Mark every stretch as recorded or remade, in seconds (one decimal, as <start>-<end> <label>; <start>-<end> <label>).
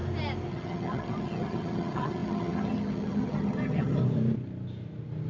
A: 0.0-0.5 recorded; 0.5-4.0 remade; 4.0-5.3 recorded